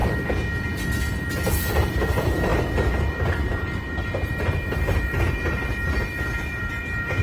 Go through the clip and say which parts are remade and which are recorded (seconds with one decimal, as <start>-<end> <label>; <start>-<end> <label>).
0.0-1.5 recorded; 1.5-7.2 remade